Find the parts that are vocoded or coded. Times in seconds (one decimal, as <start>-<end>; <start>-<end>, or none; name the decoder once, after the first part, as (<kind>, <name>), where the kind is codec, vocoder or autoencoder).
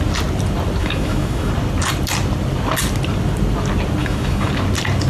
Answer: 0.8-1.5 (autoencoder, DAC-VAE); 4.0-4.5